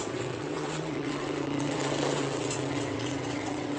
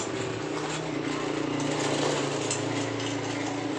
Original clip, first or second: second